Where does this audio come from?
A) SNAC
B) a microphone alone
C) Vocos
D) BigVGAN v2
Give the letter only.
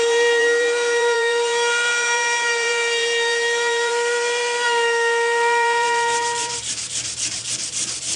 D